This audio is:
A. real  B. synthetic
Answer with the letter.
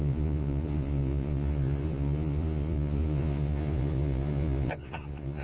B